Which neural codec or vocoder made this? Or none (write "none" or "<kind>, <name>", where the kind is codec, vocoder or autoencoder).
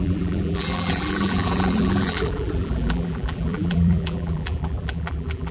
vocoder, BigVGAN v2